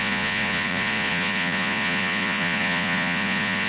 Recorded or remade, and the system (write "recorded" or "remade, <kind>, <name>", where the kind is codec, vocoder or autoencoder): remade, vocoder, Vocos